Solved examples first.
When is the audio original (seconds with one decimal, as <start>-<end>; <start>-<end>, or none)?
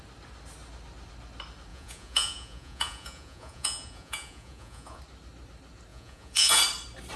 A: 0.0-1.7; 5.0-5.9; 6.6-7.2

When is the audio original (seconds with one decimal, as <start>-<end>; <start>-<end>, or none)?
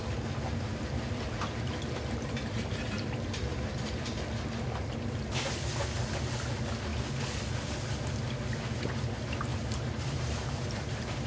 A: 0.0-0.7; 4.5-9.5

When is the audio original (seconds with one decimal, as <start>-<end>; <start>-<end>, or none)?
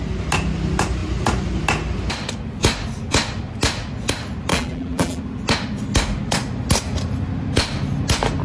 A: 0.0-4.5; 5.2-8.4